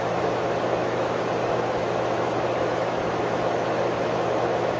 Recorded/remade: remade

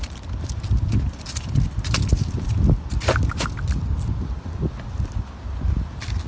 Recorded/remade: recorded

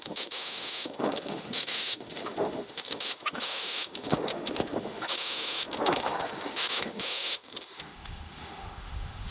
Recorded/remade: remade